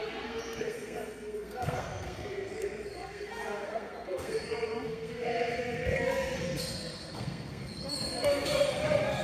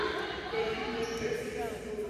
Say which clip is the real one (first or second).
second